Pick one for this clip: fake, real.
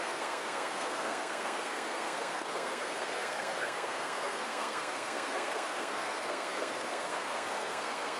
fake